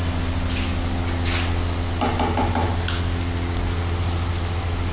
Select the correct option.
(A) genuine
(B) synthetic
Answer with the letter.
A